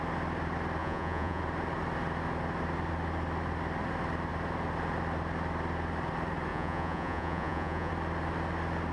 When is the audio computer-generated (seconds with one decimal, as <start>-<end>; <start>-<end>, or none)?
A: 0.8-1.4; 6.5-7.9